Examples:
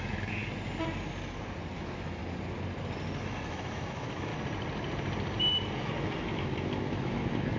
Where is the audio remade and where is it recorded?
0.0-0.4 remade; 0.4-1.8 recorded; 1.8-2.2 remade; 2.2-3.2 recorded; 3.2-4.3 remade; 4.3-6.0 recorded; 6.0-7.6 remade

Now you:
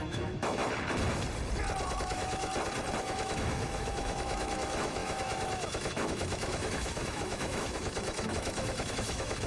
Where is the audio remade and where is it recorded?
0.0-0.6 remade; 0.6-2.0 recorded; 2.0-2.5 remade; 2.5-3.0 recorded; 3.0-9.5 remade

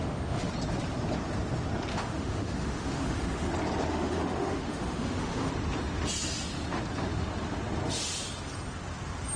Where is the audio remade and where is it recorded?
0.0-0.5 remade; 0.5-1.9 recorded; 1.9-3.5 remade; 3.5-3.9 recorded; 3.9-5.5 remade; 5.5-9.4 recorded

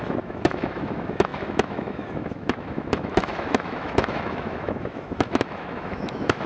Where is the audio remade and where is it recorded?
0.0-6.5 remade